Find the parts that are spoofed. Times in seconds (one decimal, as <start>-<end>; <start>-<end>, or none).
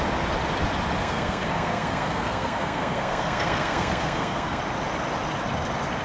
1.0-4.6